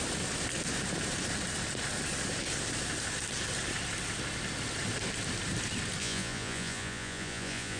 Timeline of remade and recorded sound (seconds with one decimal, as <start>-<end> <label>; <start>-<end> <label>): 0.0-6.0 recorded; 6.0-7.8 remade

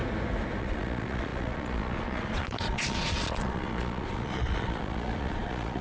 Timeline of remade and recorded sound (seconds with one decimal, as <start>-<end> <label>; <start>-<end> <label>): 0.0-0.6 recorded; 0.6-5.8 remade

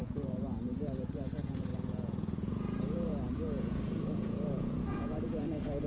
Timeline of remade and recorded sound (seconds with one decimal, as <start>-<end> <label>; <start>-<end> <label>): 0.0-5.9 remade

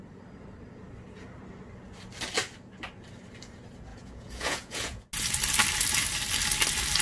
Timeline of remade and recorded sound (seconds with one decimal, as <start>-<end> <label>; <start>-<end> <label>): 0.0-3.9 recorded; 3.9-5.0 remade; 5.0-7.0 recorded

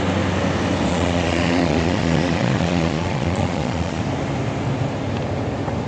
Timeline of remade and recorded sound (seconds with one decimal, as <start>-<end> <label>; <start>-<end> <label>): 0.0-0.9 recorded; 0.9-4.0 remade; 4.0-5.9 recorded

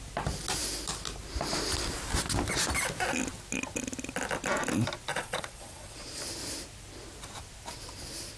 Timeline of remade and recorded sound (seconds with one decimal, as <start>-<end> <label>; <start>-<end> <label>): 0.0-5.1 recorded; 5.1-6.2 remade; 6.2-8.4 recorded